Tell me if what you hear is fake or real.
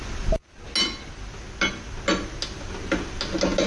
real